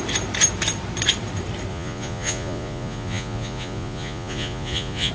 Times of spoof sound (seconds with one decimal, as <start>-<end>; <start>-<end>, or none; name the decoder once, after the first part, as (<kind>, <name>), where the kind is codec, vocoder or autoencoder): 1.7-5.1 (vocoder, Vocos)